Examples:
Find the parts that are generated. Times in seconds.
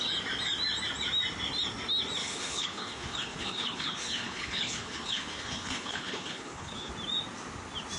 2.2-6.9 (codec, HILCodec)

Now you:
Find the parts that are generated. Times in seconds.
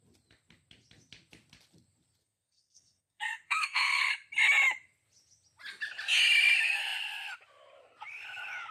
2.2-4.1 (codec, SNAC)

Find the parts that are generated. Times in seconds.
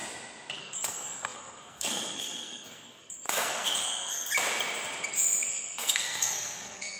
0.6-4.3 (codec, SNAC); 5.1-7.0